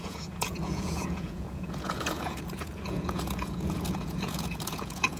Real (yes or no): no